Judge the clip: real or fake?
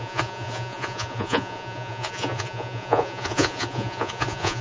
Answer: fake